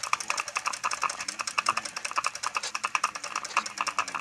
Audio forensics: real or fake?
real